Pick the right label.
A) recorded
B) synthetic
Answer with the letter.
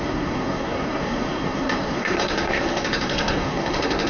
B